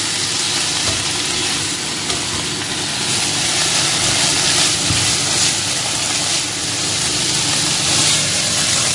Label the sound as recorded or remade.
recorded